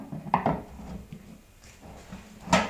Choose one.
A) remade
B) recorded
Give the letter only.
B